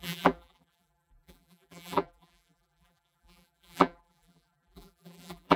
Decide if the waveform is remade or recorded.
remade